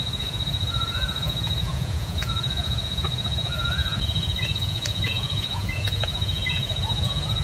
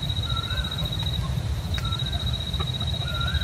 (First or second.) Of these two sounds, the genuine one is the second